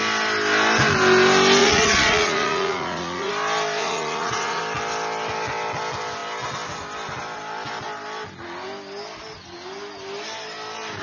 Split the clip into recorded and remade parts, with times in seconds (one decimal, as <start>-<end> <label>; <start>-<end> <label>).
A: 0.0-1.6 recorded; 1.6-3.3 remade; 3.3-3.8 recorded; 3.8-4.6 remade; 4.6-11.0 recorded